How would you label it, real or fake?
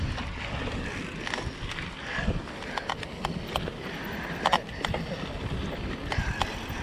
real